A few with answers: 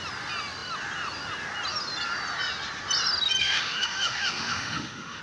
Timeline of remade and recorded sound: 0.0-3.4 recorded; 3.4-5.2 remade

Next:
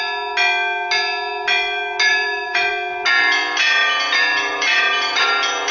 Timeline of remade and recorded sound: 0.0-2.1 recorded; 2.1-2.7 remade; 2.7-3.8 recorded; 3.8-5.7 remade

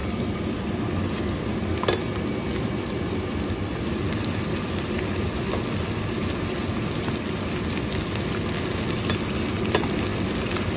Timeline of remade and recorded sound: 0.0-2.5 recorded; 2.5-5.4 remade; 5.4-10.1 recorded; 10.1-10.8 remade

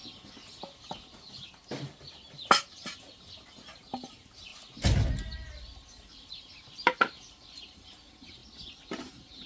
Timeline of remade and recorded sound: 0.0-3.4 recorded; 3.4-4.5 remade; 4.5-7.2 recorded; 7.2-8.4 remade; 8.4-9.0 recorded; 9.0-9.5 remade

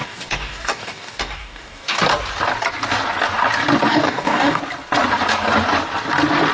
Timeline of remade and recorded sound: 0.0-2.0 remade; 2.0-3.9 recorded; 3.9-4.6 remade; 4.6-6.5 recorded

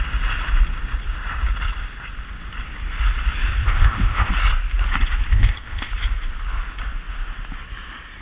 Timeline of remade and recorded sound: 0.0-3.6 recorded; 3.6-4.3 remade; 4.3-5.3 recorded; 5.3-5.9 remade; 5.9-8.2 recorded